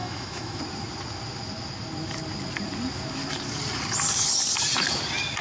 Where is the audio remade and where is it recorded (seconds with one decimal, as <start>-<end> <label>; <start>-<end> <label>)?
0.0-0.6 remade; 0.6-5.4 recorded